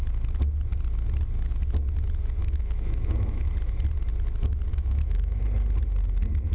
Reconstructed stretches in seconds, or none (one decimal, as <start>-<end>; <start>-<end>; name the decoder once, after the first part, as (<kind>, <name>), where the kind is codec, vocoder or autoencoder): 2.4-3.5 (autoencoder, DAC-VAE); 4.7-5.4